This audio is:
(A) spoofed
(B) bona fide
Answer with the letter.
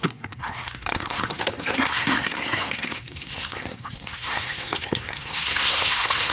A